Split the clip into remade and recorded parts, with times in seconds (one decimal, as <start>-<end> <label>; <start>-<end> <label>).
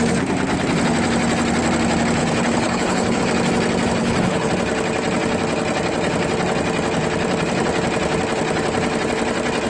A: 0.0-2.2 recorded; 2.2-3.2 remade; 3.2-4.0 recorded; 4.0-4.5 remade; 4.5-9.7 recorded